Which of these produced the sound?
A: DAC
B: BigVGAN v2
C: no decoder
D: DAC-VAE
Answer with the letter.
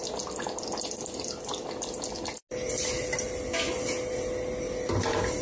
C